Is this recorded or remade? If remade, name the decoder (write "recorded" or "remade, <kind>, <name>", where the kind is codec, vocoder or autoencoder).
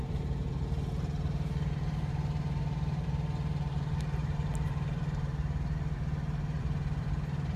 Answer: remade, vocoder, BigVGAN v2